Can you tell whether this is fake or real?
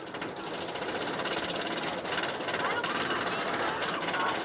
real